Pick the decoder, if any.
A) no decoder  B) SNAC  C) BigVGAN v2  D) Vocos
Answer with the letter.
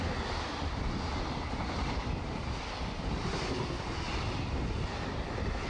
A